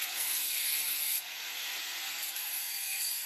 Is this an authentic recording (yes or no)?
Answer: no